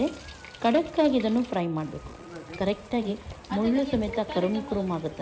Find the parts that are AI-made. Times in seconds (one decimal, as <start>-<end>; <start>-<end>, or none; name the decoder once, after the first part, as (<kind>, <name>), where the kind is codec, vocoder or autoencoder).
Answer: 2.1-3.1 (vocoder, Vocos)